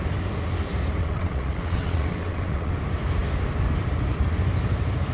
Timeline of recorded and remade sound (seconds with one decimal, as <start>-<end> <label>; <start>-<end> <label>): 0.0-1.0 recorded; 1.0-2.7 remade; 2.7-5.1 recorded